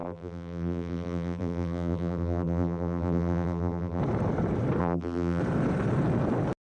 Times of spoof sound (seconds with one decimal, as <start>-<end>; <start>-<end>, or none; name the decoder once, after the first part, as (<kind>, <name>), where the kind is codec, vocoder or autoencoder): 0.0-4.0 (vocoder, BigVGAN v2); 4.8-5.4